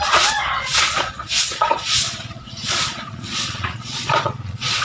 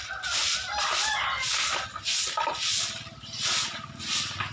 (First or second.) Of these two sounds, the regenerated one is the first